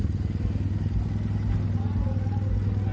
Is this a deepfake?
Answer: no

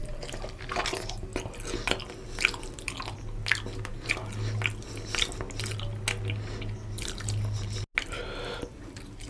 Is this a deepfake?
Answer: no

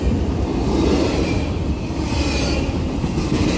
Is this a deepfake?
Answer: no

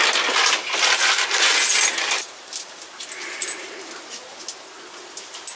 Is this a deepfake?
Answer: no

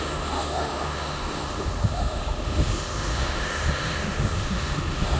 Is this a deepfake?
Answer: yes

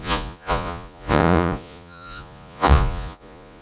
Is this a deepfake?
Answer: yes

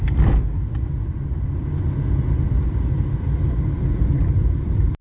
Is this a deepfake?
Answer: no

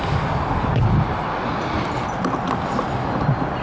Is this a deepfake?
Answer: no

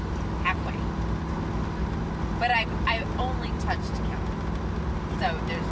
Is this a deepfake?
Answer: no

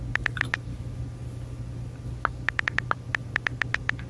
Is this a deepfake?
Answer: no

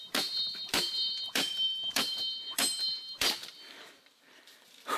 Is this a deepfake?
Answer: yes